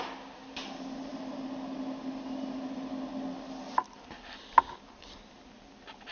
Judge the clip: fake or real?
real